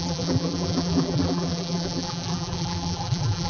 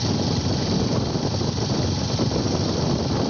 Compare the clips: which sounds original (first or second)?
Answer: second